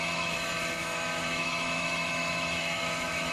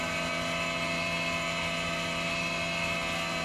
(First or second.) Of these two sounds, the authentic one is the second